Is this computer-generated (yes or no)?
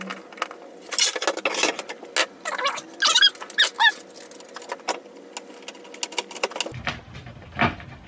no